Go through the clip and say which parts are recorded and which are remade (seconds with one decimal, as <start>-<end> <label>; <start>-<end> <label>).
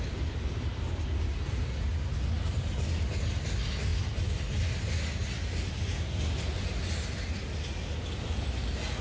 0.0-9.0 recorded